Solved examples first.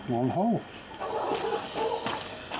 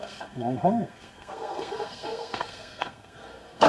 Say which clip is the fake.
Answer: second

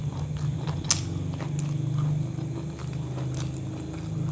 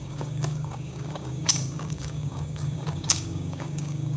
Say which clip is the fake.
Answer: second